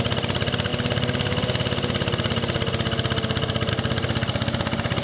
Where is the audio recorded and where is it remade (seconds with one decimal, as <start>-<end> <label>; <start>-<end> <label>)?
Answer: 0.0-5.0 recorded